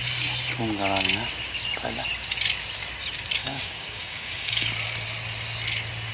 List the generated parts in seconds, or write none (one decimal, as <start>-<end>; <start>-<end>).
3.4-4.7